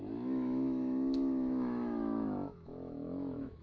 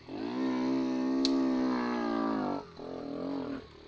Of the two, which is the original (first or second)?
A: second